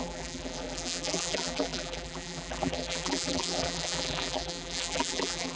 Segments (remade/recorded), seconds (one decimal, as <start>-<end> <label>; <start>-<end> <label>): 0.0-5.6 remade